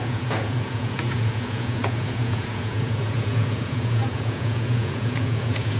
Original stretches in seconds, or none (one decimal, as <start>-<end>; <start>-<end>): none